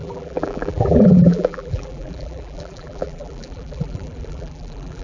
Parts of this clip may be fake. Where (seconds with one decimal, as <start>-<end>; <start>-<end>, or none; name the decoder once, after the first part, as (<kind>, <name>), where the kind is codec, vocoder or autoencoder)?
0.0-5.0 (vocoder, BigVGAN v2)